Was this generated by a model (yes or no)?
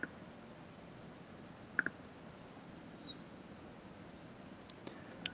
no